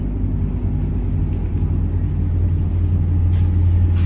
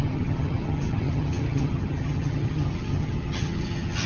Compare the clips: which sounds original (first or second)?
first